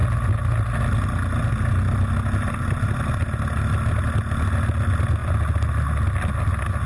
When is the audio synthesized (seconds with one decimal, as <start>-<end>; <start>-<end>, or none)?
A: none